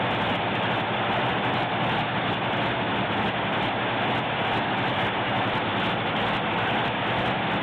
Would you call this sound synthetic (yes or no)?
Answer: no